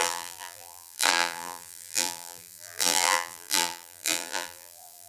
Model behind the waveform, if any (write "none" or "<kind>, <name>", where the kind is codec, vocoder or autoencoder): vocoder, BigVGAN v2